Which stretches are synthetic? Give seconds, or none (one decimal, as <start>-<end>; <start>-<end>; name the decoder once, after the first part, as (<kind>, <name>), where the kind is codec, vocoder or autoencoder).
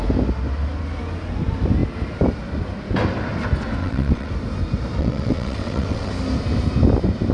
3.8-4.3 (vocoder, WaveNeXt); 5.0-6.1